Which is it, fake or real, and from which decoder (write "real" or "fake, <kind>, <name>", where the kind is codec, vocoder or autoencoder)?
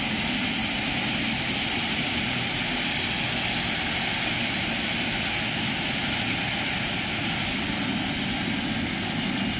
real